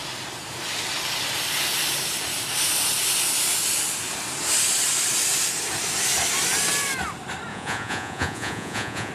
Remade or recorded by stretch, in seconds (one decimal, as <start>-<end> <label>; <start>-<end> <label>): 0.0-7.5 recorded; 7.5-9.1 remade